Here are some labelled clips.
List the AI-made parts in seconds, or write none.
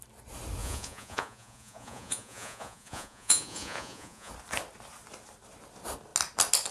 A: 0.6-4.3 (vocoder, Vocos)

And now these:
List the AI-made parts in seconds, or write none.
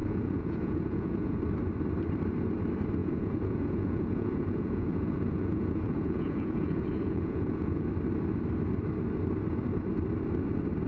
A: 0.0-1.4 (vocoder, Vocos); 3.0-7.9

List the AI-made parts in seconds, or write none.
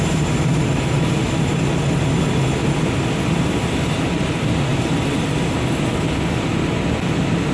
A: none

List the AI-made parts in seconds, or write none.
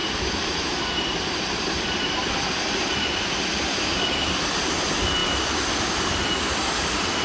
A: none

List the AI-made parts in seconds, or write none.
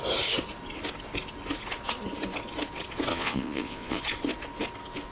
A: 3.1-4.0 (vocoder, Vocos)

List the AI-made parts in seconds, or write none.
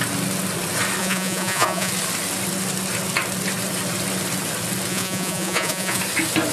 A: 1.0-1.9 (vocoder, Vocos); 4.9-6.0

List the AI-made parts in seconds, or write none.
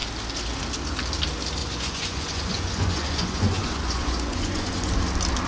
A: 1.6-4.9 (vocoder, Vocos)